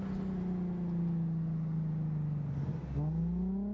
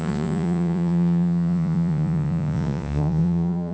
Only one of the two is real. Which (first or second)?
first